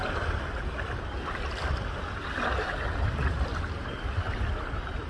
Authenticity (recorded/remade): recorded